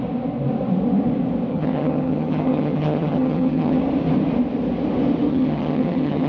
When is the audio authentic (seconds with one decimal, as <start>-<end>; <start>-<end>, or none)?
0.0-1.5; 3.8-5.3